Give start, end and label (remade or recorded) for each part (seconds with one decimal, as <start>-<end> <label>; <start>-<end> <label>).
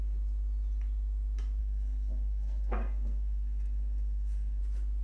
0.0-1.6 recorded; 1.6-4.6 remade; 4.6-5.0 recorded